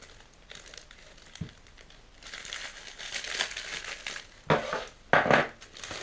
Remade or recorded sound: recorded